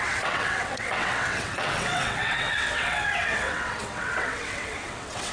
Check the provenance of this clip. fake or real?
fake